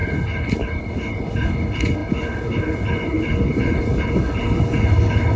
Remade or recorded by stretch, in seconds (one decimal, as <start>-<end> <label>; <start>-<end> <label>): 0.0-5.4 remade